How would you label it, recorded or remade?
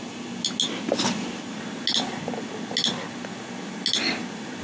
recorded